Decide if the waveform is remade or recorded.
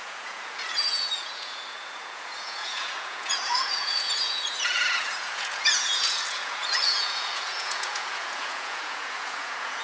remade